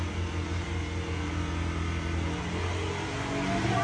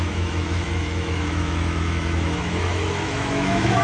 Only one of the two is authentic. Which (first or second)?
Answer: first